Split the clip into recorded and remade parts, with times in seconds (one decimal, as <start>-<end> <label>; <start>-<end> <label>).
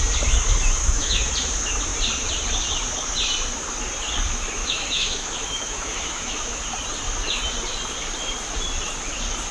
0.0-0.8 recorded; 0.8-1.3 remade; 1.3-4.6 recorded; 4.6-6.6 remade; 6.6-9.5 recorded